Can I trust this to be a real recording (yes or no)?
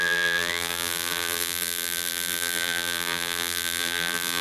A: no